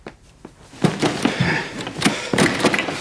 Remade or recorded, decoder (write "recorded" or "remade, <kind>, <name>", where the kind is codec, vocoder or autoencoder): recorded